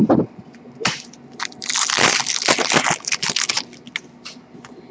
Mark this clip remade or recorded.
recorded